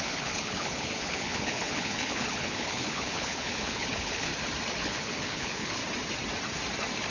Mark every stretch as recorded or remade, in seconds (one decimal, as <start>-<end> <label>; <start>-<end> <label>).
0.0-4.3 remade; 4.3-4.8 recorded; 4.8-5.8 remade; 5.8-7.1 recorded